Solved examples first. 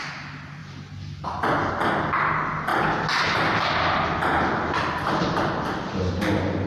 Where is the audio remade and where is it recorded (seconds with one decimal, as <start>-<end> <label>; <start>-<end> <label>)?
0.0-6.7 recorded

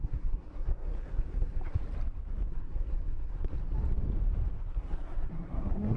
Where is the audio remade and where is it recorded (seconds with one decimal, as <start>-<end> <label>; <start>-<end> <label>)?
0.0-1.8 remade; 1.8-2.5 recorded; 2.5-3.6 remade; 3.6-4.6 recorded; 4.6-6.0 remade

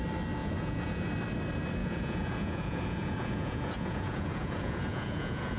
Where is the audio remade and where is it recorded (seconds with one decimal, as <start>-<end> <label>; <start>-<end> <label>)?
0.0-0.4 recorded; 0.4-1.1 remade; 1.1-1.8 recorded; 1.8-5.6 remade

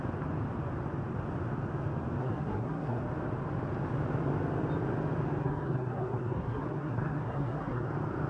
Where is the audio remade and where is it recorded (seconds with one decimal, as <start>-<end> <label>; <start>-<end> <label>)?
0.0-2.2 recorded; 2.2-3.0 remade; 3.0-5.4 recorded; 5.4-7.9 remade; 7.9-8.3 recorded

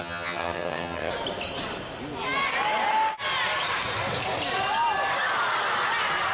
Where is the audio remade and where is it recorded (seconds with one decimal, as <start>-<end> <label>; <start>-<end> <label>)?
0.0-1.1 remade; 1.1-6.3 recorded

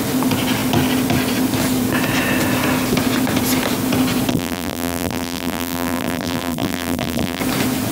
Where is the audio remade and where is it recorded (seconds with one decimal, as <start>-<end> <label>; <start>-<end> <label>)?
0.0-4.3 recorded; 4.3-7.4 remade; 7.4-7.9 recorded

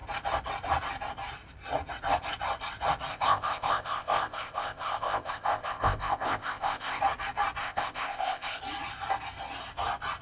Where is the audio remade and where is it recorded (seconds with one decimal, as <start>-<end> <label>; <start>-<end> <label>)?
0.0-3.1 recorded; 3.1-7.0 remade; 7.0-7.6 recorded; 7.6-8.6 remade; 8.6-10.2 recorded

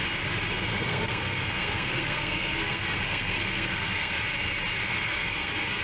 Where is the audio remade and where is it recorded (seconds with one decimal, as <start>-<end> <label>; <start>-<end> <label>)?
0.0-0.7 recorded; 0.7-4.2 remade; 4.2-4.9 recorded; 4.9-5.8 remade